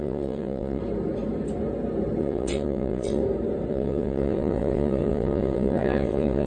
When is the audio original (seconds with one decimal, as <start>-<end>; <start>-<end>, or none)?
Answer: 0.8-2.2; 3.2-3.7